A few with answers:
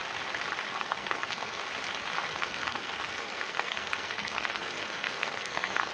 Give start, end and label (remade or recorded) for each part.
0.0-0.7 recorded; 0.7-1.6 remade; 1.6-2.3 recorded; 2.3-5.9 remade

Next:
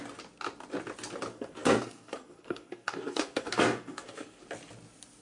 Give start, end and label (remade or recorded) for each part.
0.0-1.3 recorded; 1.3-4.4 remade; 4.4-5.2 recorded